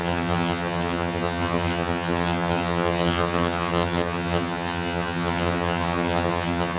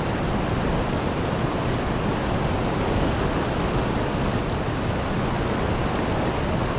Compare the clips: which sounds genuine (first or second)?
second